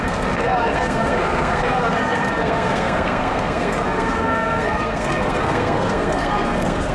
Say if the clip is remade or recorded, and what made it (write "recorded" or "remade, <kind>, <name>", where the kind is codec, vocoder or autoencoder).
remade, codec, SNAC